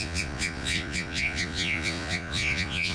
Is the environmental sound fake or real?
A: fake